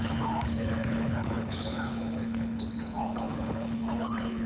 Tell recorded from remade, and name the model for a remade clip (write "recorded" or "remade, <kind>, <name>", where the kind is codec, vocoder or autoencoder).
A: remade, codec, HILCodec